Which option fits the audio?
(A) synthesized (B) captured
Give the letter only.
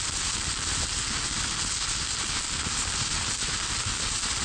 B